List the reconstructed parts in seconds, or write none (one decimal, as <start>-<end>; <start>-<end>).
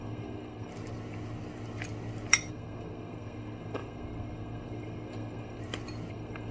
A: 0.0-0.7; 2.5-5.6; 6.1-6.5